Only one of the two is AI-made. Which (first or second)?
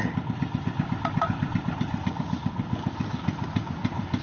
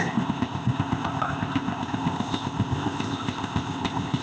second